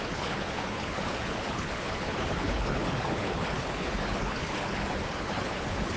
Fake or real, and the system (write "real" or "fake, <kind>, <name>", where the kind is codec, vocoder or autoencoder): fake, codec, HILCodec